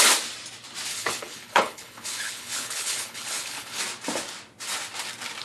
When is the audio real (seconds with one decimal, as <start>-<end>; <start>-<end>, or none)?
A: 0.0-0.9; 3.8-5.4